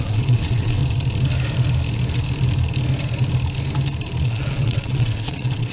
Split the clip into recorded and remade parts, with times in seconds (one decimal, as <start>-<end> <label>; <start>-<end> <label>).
0.0-0.8 remade; 0.8-4.2 recorded; 4.2-5.7 remade

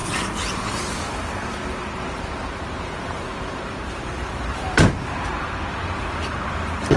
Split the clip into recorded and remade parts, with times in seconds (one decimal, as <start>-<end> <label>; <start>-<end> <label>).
0.0-7.0 remade

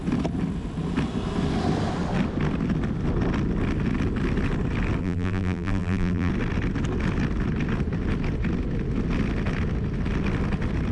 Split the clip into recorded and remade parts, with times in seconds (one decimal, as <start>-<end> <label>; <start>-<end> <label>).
0.0-5.0 recorded; 5.0-6.3 remade; 6.3-10.9 recorded

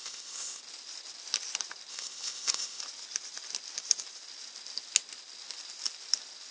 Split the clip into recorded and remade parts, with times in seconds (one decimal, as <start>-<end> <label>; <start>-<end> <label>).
0.0-0.6 remade; 0.6-1.9 recorded; 1.9-2.8 remade; 2.8-6.5 recorded